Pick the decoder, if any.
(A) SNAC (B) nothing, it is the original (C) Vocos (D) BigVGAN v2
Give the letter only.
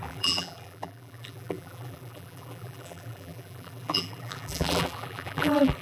D